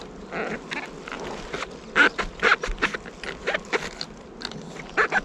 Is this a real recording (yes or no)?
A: yes